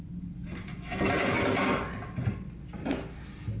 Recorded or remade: recorded